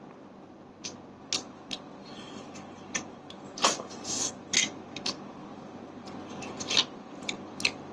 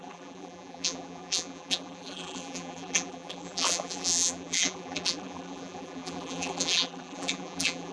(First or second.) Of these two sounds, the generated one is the second